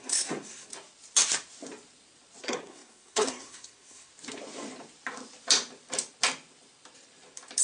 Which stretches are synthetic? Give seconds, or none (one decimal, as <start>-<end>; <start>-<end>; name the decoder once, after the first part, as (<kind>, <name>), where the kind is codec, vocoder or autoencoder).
0.0-0.7 (codec, SNAC); 2.4-4.1